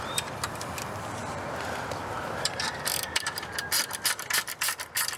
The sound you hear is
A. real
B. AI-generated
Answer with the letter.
B